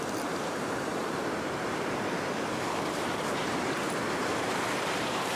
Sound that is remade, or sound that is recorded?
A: remade